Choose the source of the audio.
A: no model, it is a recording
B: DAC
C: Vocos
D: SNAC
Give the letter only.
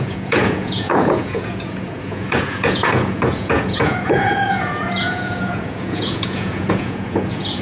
C